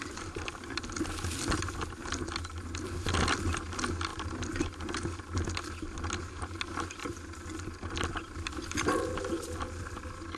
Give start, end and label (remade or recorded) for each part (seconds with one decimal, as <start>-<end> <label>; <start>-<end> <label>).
0.0-10.4 recorded